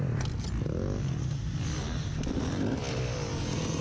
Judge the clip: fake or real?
real